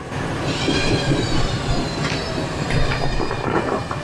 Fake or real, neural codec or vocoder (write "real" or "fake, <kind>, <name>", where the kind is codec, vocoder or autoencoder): fake, vocoder, BigVGAN v2